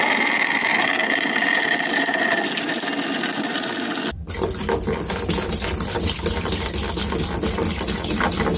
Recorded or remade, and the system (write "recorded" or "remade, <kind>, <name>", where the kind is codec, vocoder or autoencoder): recorded